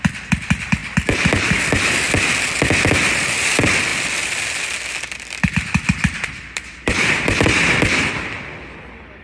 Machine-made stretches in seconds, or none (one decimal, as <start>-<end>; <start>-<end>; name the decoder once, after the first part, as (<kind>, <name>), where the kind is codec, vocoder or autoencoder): 0.0-9.2 (vocoder, BigVGAN v2)